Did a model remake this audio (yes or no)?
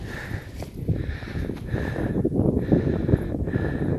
no